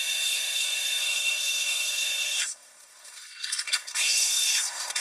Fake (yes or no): yes